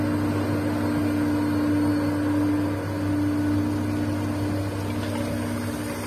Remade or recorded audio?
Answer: recorded